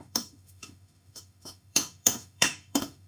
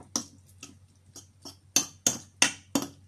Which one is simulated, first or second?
first